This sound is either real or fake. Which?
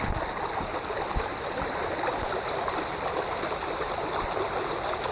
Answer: real